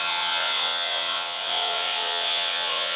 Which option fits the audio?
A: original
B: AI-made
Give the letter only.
B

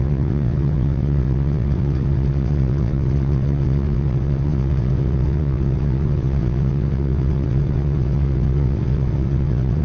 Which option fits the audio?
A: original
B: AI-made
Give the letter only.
B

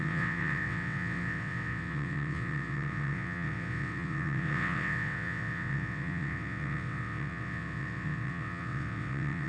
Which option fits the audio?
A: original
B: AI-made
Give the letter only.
B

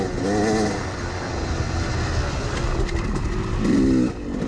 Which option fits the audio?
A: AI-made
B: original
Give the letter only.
B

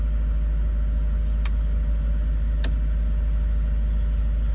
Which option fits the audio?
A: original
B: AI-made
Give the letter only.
A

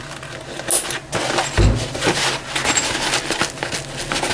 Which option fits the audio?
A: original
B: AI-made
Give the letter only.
A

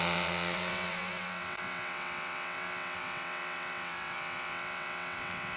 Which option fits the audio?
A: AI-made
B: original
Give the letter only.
A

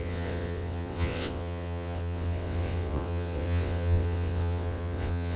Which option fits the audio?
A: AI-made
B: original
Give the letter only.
A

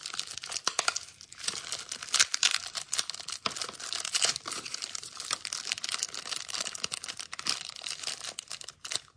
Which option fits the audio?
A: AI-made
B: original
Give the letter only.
B